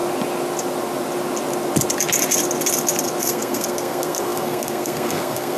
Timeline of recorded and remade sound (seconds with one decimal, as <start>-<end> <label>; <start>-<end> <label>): 0.0-3.2 recorded; 3.2-5.6 remade